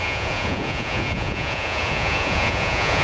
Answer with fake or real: fake